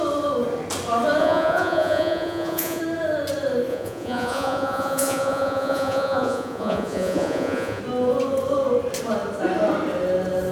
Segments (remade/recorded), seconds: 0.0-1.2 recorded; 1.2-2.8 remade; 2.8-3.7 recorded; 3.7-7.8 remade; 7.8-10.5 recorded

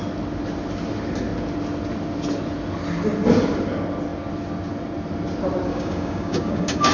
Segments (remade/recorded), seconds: 0.0-5.7 recorded; 5.7-6.9 remade